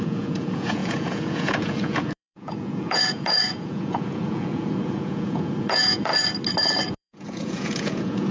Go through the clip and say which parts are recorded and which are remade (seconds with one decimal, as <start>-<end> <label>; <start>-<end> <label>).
0.0-6.1 remade; 6.1-6.9 recorded; 6.9-8.3 remade